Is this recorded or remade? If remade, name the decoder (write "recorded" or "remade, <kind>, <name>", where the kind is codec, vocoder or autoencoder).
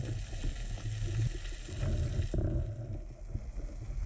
recorded